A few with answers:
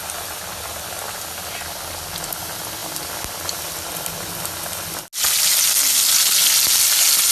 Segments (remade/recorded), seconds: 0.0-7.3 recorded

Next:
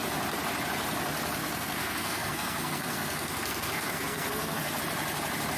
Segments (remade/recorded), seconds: 0.0-1.4 recorded; 1.4-4.8 remade; 4.8-5.6 recorded

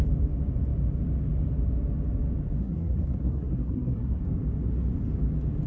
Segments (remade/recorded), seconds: 0.0-2.6 recorded; 2.6-4.2 remade; 4.2-5.7 recorded

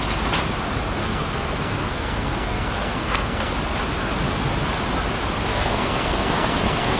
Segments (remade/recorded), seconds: 0.0-1.0 recorded; 1.0-3.5 remade; 3.5-5.5 recorded; 5.5-7.0 remade

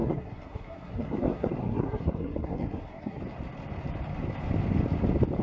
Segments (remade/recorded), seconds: 0.0-3.2 remade; 3.2-5.4 recorded

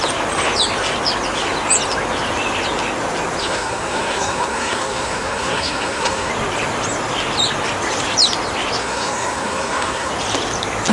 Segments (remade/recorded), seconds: 0.0-3.4 recorded; 3.4-6.3 remade; 6.3-8.8 recorded; 8.8-10.1 remade; 10.1-10.9 recorded

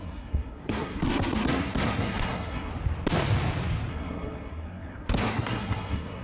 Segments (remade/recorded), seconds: 0.0-2.7 remade; 2.7-3.9 recorded; 3.9-6.2 remade